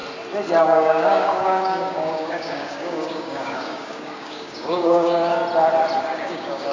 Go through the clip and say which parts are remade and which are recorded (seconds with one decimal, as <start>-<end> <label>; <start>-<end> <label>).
0.0-0.6 recorded; 0.6-5.4 remade; 5.4-6.0 recorded; 6.0-6.7 remade